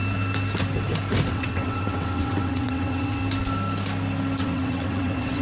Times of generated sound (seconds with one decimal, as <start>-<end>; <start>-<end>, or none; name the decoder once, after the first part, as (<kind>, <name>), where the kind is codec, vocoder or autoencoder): 1.3-3.2 (vocoder, WaveNeXt); 4.4-5.4